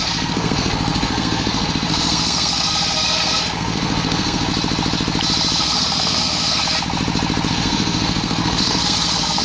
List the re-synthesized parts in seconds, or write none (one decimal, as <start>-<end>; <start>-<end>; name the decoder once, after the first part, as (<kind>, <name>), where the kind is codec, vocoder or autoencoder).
0.0-4.5 (codec, SNAC); 5.6-6.6; 7.5-9.4